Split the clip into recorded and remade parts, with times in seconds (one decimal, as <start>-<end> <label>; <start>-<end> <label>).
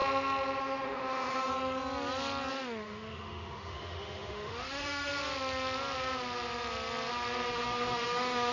0.0-0.6 recorded; 0.6-1.5 remade; 1.5-2.5 recorded; 2.5-5.1 remade; 5.1-7.5 recorded; 7.5-8.5 remade